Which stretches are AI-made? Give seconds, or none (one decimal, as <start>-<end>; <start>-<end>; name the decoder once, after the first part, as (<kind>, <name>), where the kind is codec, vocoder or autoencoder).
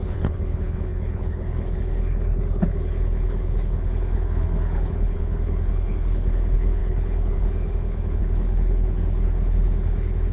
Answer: 0.0-10.3 (codec, HILCodec)